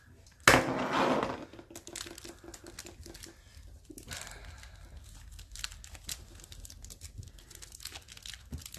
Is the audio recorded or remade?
recorded